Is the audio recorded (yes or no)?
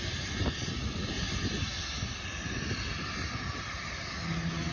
yes